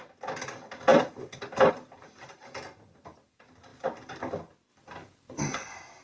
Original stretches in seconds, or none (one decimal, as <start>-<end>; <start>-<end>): 0.0-6.0